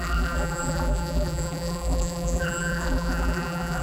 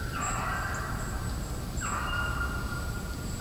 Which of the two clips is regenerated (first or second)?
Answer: first